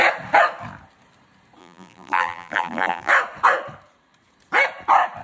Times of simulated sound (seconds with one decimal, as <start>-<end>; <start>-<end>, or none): 1.6-3.1